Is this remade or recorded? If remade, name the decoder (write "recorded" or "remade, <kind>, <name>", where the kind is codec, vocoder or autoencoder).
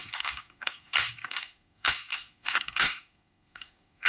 remade, codec, SNAC